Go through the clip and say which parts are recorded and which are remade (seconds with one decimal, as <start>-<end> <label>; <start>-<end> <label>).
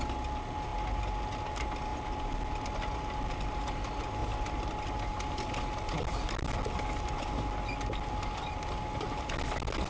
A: 0.0-9.9 recorded